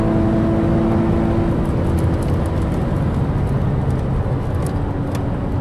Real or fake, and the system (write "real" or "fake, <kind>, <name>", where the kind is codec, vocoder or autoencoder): real